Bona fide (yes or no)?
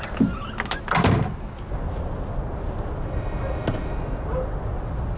yes